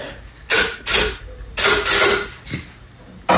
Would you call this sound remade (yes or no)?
no